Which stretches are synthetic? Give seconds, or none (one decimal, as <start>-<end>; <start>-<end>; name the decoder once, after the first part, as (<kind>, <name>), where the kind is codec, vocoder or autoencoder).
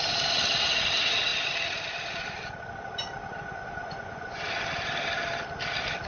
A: 3.3-4.4 (vocoder, Vocos)